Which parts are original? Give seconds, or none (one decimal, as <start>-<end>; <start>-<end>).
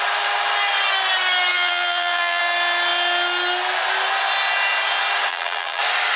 0.0-1.5; 2.4-5.3; 5.8-6.2